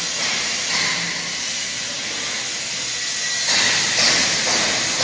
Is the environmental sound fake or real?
real